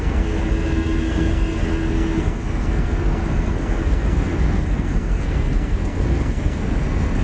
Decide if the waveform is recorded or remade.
remade